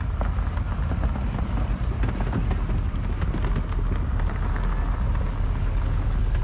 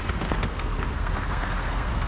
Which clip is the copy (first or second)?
second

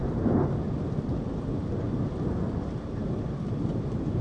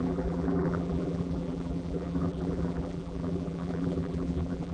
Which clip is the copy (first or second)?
second